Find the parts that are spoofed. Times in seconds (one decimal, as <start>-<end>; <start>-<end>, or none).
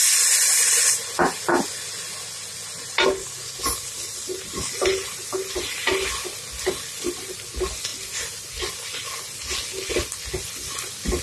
none